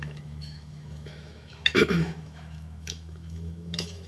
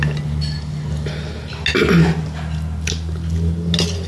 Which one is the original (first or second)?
second